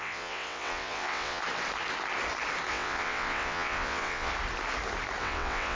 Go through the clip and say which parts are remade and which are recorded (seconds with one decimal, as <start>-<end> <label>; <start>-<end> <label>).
0.0-1.4 remade; 1.4-2.7 recorded; 2.7-4.3 remade; 4.3-5.2 recorded; 5.2-5.7 remade